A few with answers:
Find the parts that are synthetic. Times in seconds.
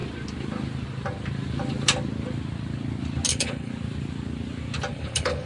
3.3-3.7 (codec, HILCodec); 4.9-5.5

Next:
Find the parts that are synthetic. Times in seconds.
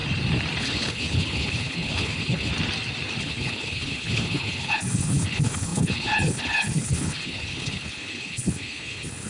0.6-2.5 (codec, HILCodec); 3.2-9.3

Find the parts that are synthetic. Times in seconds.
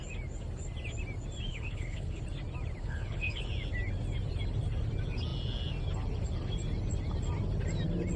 1.5-2.2 (codec, HILCodec); 2.8-3.4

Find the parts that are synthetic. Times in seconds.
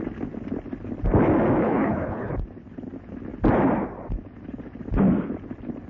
1.6-2.3 (codec, HILCodec)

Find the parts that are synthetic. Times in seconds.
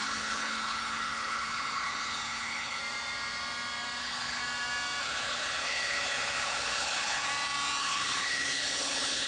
0.0-2.8 (codec, HILCodec); 4.0-4.4; 5.0-7.3; 7.8-9.3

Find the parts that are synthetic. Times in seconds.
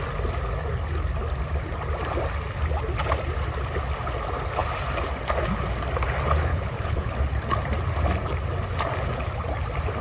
6.5-7.1 (codec, HILCodec)